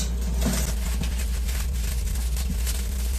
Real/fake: real